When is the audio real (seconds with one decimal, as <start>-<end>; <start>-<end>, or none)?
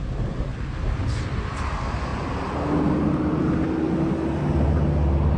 0.0-0.5; 1.1-5.4